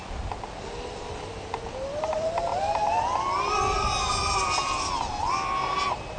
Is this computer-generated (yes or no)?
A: no